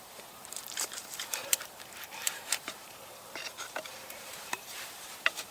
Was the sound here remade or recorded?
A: remade